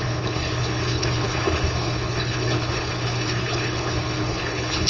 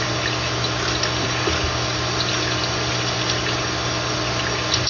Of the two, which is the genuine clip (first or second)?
second